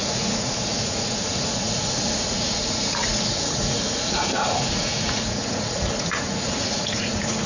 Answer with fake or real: fake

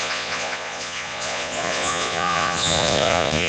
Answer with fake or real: fake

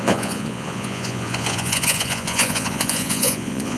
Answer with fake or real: fake